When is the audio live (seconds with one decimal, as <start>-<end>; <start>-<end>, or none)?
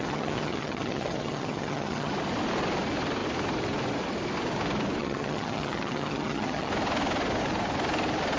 2.1-5.0; 6.7-8.4